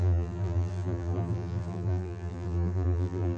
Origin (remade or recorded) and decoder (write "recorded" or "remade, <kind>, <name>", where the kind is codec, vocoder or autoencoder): remade, vocoder, BigVGAN v2